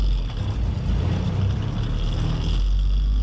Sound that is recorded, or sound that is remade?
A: recorded